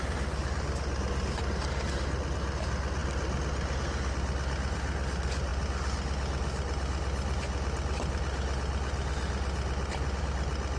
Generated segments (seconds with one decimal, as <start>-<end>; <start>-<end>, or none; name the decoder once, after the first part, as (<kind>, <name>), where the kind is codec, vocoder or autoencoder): none